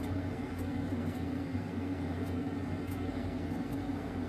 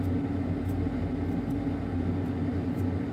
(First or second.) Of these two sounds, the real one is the second